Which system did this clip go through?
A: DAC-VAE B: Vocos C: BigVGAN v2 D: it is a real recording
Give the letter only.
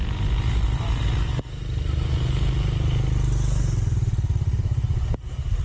D